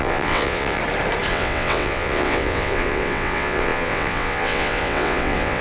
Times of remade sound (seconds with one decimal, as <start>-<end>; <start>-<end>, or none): 0.0-0.8; 1.3-5.6